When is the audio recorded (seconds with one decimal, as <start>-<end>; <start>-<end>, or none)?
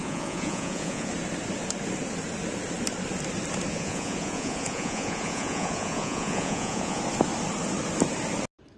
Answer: 1.1-3.7; 7.0-8.8